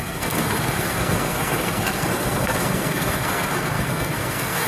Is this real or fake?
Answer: fake